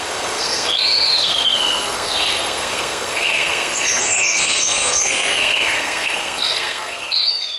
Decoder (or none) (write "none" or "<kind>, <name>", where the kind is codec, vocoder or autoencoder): codec, SNAC